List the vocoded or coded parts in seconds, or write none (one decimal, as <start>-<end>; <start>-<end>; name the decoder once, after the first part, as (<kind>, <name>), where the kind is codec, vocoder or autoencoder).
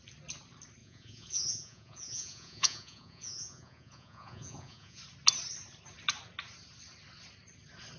0.8-5.0 (vocoder, Vocos)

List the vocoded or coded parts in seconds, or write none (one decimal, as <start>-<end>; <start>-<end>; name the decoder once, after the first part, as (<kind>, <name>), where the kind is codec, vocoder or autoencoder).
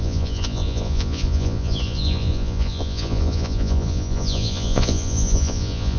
0.0-6.0 (vocoder, Vocos)